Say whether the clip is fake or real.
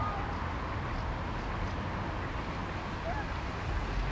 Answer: real